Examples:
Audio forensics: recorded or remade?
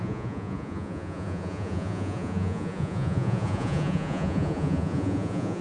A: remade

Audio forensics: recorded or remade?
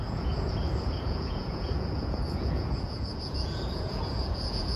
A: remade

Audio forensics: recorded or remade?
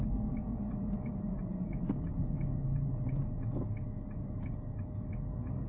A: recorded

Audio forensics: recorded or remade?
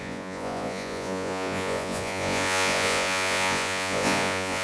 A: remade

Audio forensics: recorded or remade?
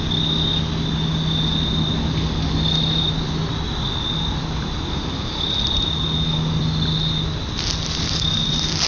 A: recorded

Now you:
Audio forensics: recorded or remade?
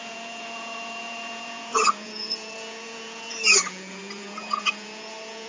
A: remade